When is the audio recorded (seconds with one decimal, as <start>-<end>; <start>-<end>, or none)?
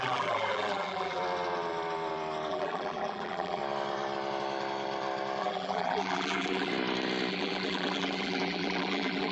1.2-2.5; 3.6-5.4; 6.7-7.3